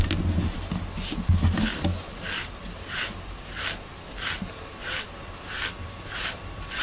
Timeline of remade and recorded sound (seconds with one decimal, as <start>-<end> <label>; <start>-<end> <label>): 0.0-6.8 recorded